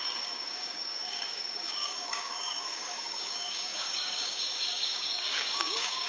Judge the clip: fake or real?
fake